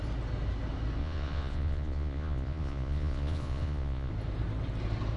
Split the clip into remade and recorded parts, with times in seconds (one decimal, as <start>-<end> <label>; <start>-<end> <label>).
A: 0.0-1.0 recorded; 1.0-4.1 remade; 4.1-5.2 recorded